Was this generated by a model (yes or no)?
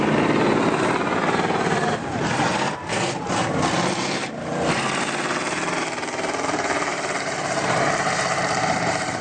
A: yes